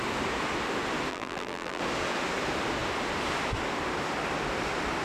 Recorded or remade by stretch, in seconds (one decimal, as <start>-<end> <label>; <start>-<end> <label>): 0.0-1.1 recorded; 1.1-1.8 remade; 1.8-5.0 recorded